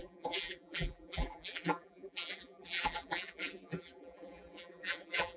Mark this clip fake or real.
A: fake